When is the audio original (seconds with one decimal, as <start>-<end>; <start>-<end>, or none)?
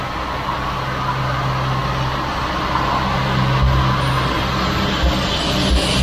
0.0-6.0